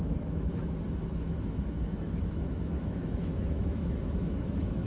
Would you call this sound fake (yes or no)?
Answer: yes